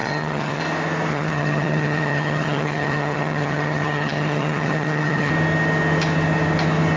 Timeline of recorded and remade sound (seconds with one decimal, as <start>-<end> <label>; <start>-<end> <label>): 0.0-0.6 remade; 0.6-1.1 recorded; 1.1-5.3 remade; 5.3-7.0 recorded